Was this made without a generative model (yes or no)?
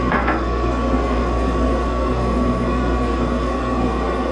no